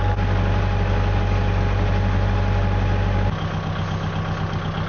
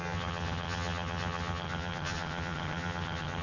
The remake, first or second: second